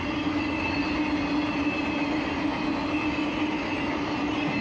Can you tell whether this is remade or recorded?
recorded